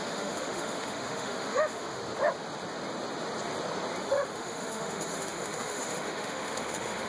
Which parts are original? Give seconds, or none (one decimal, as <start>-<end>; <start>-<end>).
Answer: 2.0-4.0